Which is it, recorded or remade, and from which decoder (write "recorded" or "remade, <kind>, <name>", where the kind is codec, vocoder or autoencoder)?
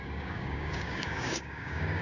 remade, codec, DAC